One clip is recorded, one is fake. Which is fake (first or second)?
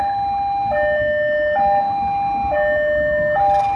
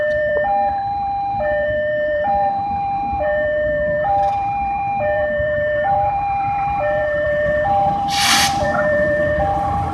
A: second